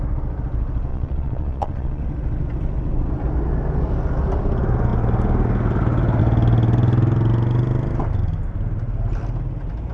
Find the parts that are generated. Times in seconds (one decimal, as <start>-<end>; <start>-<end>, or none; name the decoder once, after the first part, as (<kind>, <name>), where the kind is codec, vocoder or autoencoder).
0.9-2.0 (vocoder, Vocos)